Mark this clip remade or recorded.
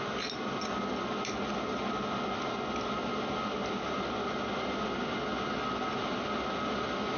recorded